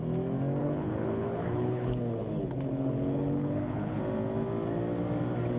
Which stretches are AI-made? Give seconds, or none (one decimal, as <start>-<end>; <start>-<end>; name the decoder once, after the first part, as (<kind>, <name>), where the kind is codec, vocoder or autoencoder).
0.6-4.0 (codec, HILCodec)